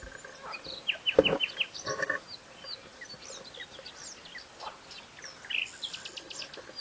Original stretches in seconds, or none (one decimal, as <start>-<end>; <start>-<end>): 0.0-6.8